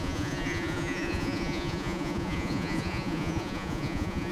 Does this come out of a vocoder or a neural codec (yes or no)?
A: yes